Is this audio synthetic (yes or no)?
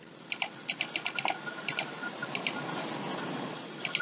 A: no